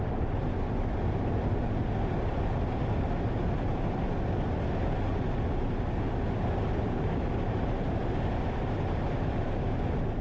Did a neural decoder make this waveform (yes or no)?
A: no